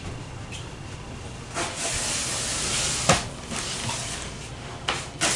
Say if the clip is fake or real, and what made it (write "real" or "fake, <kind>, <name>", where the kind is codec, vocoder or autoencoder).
real